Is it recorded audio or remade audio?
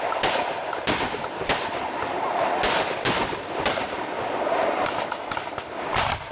recorded